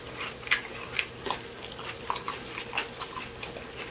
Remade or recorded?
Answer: recorded